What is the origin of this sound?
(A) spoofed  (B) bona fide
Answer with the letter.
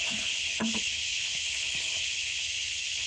A